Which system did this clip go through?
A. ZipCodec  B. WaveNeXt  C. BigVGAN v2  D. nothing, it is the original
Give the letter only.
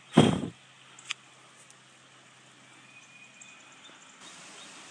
D